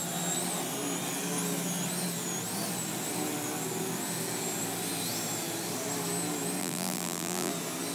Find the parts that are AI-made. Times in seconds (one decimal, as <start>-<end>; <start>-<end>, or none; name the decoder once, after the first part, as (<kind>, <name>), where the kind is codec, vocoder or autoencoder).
6.6-7.5 (vocoder, BigVGAN v2)